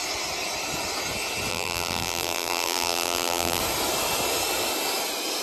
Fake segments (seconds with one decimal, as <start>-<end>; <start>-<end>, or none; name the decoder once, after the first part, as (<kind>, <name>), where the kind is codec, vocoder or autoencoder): 1.5-3.6 (vocoder, BigVGAN v2)